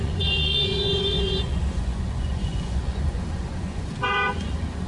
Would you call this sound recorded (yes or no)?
no